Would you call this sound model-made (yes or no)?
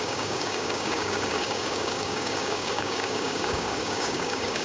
yes